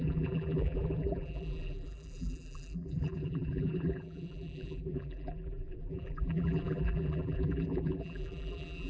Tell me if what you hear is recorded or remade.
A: remade